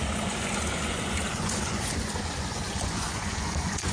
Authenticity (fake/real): fake